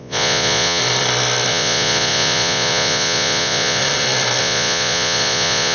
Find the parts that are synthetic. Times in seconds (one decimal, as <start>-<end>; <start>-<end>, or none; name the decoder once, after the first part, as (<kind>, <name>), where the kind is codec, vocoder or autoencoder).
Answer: 0.0-0.8 (vocoder, Vocos); 1.5-3.8; 4.4-5.7